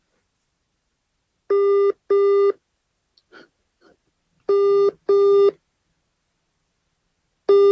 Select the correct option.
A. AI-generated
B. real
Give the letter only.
B